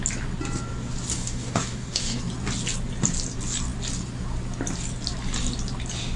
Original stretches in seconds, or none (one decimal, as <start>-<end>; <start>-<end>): 0.0-1.1; 2.2-6.2